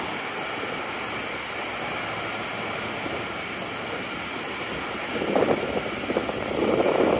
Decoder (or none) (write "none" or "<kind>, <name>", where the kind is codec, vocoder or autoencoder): none